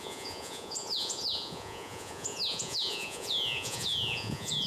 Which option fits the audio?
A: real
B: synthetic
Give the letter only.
B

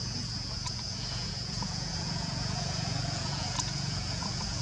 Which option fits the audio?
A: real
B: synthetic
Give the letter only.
B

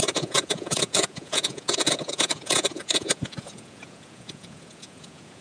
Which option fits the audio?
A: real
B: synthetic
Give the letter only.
B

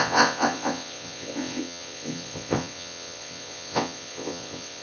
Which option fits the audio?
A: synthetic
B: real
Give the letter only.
A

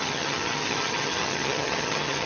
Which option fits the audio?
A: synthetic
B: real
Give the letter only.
A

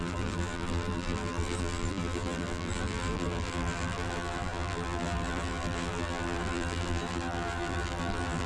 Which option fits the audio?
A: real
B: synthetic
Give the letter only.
B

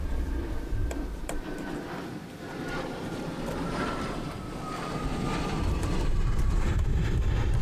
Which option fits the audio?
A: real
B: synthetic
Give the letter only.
B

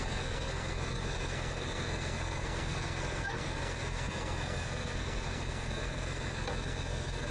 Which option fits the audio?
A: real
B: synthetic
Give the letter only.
B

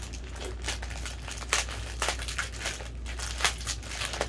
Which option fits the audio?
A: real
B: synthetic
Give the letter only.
A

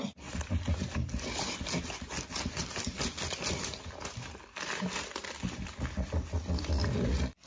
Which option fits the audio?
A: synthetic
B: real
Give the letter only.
B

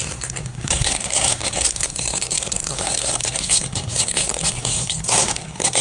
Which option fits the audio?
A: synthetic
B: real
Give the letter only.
A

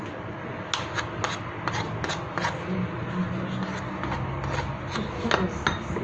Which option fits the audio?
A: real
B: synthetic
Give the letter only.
A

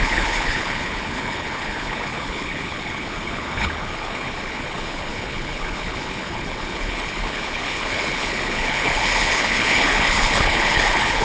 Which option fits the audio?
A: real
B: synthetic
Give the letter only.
B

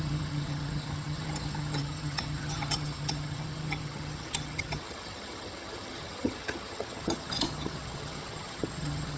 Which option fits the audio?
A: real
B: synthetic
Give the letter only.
B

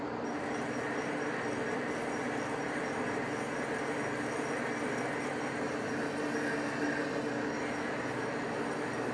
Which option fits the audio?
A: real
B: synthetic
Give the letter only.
A